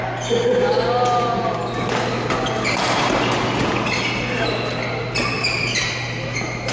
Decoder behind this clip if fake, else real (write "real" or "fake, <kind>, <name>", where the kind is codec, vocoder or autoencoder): real